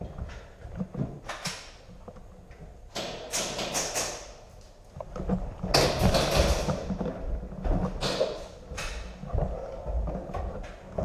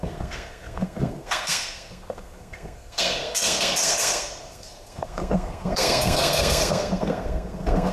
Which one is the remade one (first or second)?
second